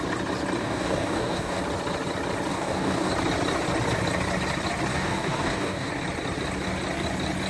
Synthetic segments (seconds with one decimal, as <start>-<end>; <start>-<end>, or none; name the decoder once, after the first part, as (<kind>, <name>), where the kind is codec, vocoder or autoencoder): 0.6-1.6 (codec, DAC); 2.5-3.1; 4.9-5.9